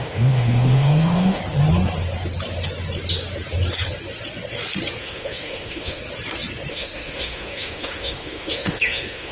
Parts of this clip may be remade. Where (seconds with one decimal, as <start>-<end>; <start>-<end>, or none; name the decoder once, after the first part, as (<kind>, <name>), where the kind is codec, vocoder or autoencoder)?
0.0-1.4 (autoencoder, DAC-VAE); 5.0-6.0; 6.7-9.3